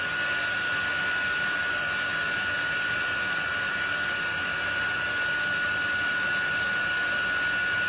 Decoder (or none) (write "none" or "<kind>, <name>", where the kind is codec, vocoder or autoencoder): none